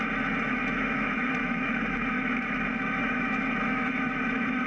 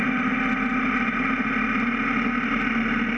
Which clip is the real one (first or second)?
second